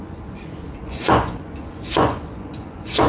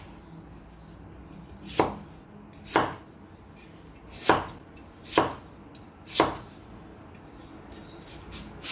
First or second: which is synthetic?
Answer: first